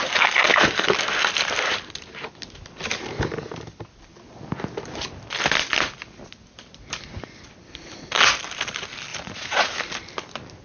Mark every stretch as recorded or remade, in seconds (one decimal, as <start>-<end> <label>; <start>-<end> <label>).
0.0-9.1 recorded; 9.1-9.8 remade; 9.8-10.6 recorded